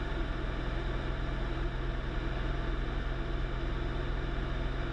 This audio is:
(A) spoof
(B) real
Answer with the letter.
B